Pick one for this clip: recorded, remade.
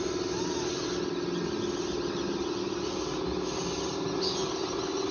recorded